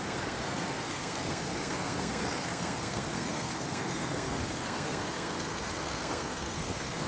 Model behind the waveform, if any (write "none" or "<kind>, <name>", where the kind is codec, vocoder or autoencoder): codec, SNAC